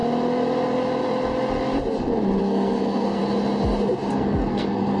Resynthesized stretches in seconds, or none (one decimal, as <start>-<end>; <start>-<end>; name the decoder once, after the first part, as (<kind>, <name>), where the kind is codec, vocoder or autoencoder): 2.4-3.2 (codec, SNAC); 4.1-5.0